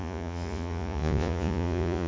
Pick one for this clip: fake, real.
fake